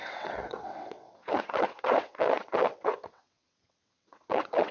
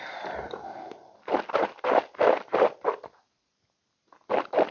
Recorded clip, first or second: second